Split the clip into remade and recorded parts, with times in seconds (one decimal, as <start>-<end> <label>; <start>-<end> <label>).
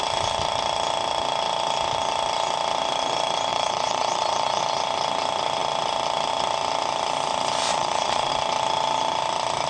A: 0.0-3.5 recorded; 3.5-4.6 remade; 4.6-7.7 recorded; 7.7-8.3 remade; 8.3-9.7 recorded